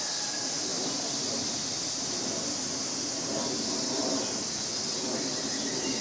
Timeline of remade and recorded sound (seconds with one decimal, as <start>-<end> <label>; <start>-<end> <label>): 0.0-0.7 recorded; 0.7-1.8 remade; 1.8-6.0 recorded